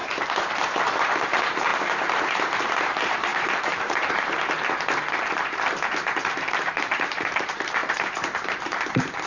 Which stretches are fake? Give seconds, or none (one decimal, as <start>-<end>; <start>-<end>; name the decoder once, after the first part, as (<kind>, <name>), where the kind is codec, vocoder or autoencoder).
0.6-9.3 (vocoder, BigVGAN v2)